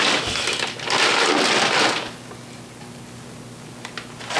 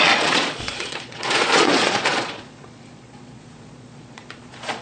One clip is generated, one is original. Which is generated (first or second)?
second